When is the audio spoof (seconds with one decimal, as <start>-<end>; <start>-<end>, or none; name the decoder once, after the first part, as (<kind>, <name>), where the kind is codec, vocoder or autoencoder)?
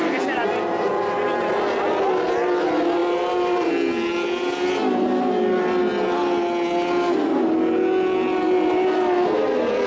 none